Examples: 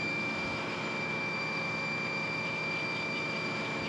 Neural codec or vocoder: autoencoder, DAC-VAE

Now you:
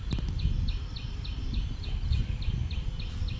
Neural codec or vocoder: none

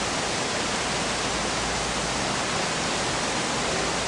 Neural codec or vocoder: none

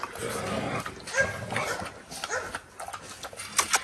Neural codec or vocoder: none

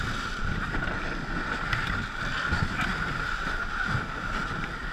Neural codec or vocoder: none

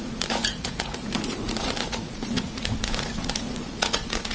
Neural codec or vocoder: vocoder, Vocos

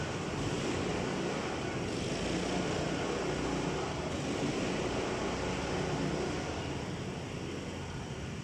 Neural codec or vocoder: none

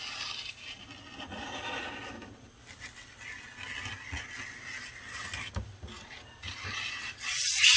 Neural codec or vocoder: none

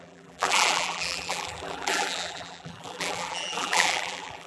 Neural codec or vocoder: vocoder, BigVGAN v2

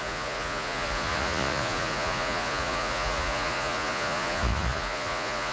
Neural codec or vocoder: vocoder, Vocos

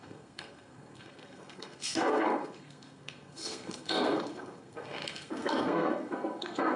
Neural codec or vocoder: codec, SNAC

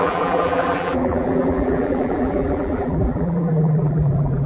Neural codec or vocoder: vocoder, BigVGAN v2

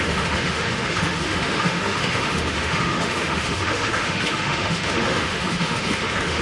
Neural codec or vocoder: autoencoder, DAC-VAE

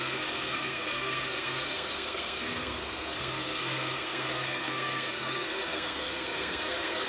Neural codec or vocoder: codec, SNAC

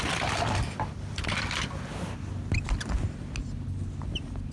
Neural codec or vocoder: none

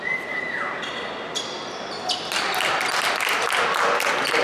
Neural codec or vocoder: none